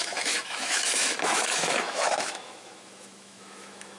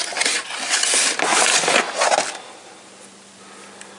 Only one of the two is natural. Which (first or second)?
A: second